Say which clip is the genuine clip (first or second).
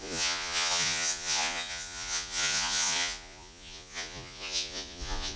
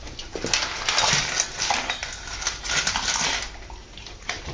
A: second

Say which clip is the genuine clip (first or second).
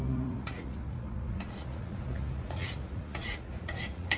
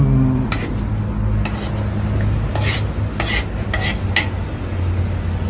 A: second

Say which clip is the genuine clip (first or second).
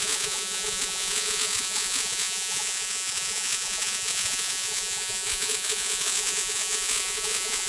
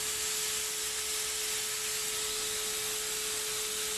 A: second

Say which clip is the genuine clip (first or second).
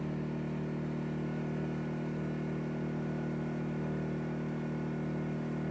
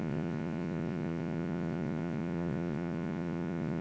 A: first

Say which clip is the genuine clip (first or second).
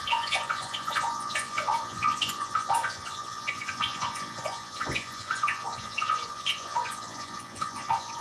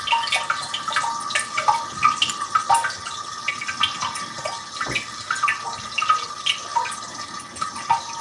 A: second